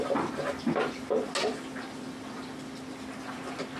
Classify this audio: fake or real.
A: real